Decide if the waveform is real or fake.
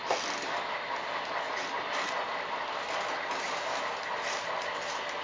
real